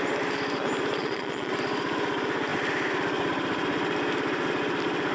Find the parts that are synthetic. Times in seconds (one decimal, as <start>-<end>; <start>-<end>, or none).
1.0-1.5